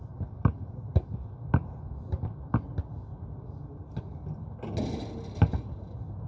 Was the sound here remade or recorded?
recorded